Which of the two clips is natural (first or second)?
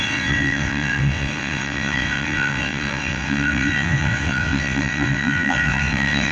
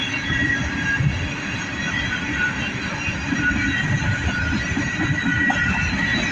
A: second